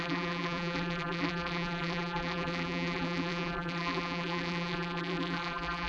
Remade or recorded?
remade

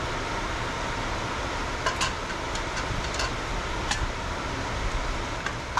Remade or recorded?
recorded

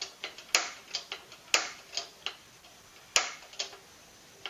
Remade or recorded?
recorded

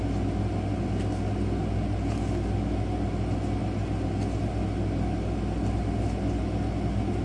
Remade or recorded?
recorded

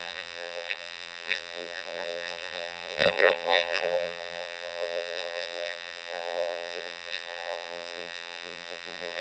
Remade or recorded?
remade